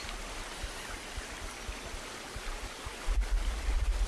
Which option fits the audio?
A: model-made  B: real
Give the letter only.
B